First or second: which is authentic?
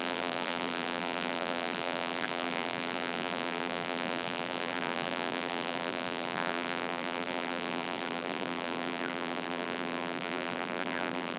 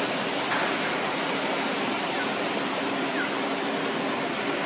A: second